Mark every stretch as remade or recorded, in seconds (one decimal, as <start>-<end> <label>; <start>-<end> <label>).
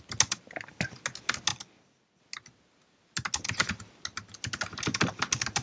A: 0.0-5.6 recorded